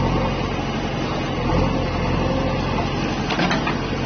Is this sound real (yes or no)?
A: yes